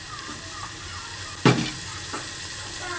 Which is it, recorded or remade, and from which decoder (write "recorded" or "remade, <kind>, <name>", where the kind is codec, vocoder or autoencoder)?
recorded